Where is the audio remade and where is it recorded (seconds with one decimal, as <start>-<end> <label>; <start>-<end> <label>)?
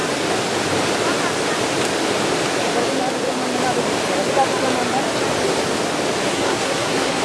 0.0-6.3 recorded; 6.3-7.2 remade